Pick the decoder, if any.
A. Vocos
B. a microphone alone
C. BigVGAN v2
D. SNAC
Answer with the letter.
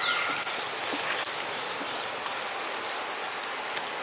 B